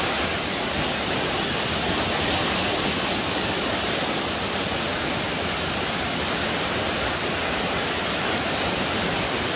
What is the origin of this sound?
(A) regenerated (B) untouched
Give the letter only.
B